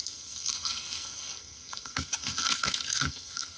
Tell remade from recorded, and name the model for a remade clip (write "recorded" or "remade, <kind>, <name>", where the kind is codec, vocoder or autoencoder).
remade, codec, SNAC